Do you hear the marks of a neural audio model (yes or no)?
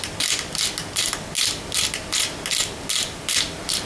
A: no